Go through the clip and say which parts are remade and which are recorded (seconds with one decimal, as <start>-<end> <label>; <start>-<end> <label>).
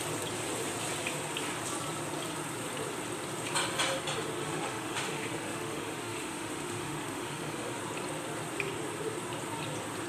0.0-4.4 recorded; 4.4-7.8 remade; 7.8-10.1 recorded